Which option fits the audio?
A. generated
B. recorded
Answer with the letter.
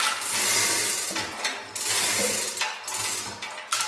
B